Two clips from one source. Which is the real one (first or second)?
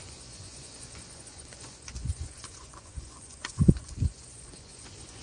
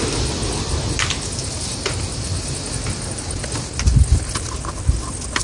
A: second